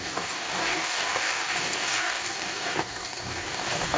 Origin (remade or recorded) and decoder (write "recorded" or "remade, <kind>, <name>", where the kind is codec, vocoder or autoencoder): remade, codec, DAC